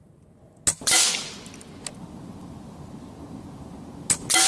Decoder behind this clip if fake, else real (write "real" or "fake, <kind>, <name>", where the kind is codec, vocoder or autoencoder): real